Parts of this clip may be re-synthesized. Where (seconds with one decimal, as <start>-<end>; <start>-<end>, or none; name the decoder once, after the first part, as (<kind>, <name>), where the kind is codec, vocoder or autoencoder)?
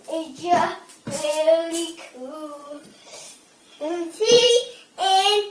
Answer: 2.6-4.5 (vocoder, Vocos)